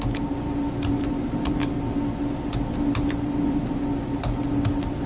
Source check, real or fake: real